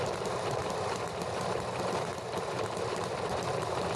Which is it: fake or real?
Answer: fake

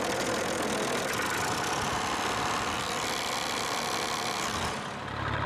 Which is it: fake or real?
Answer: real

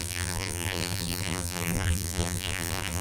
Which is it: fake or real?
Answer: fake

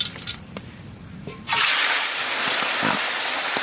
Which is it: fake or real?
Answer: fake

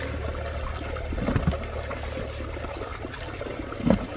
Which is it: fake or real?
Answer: real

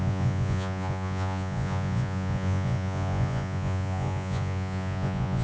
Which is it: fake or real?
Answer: fake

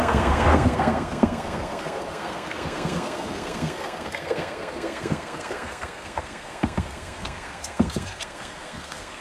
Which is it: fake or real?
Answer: fake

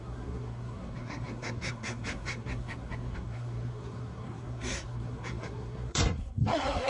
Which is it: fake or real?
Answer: fake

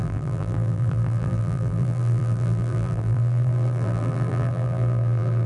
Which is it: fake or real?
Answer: fake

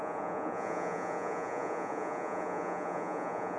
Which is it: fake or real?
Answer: fake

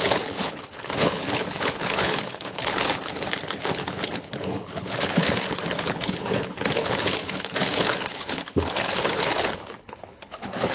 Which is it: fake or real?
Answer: fake